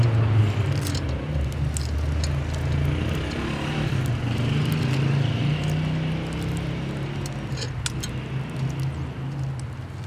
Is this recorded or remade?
recorded